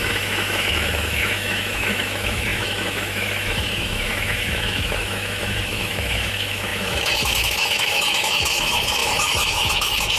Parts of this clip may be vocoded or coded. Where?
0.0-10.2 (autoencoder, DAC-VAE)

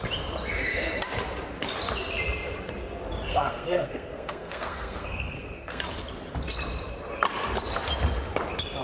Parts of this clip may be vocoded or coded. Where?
3.3-5.8 (codec, SNAC)

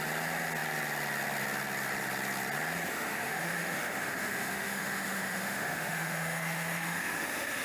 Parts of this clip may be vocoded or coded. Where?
2.9-7.6 (autoencoder, DAC-VAE)

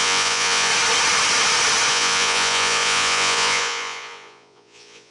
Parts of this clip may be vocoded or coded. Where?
0.0-0.7 (vocoder, Vocos); 1.9-5.1

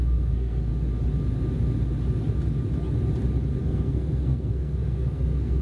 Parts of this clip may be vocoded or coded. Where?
0.0-0.7 (codec, SNAC); 3.6-5.6

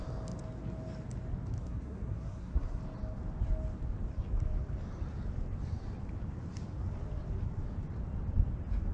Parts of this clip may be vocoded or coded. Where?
1.6-2.8 (codec, SNAC)

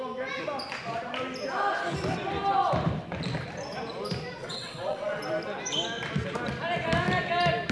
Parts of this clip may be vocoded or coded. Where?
4.4-5.2 (vocoder, WaveNeXt)

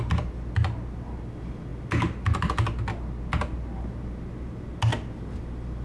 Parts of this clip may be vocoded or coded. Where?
none